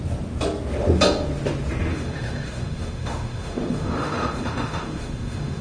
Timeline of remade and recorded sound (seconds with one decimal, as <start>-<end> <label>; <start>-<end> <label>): 0.0-1.9 recorded; 1.9-5.6 remade